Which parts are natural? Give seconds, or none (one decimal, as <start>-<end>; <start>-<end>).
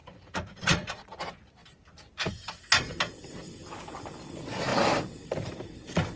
1.2-6.2